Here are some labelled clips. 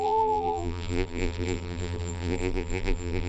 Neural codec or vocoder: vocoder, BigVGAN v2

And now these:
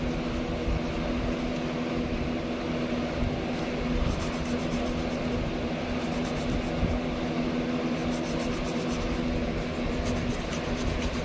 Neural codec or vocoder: none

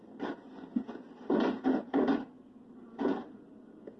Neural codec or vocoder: none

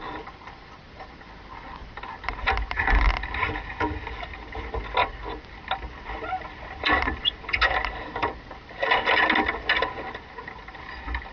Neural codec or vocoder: none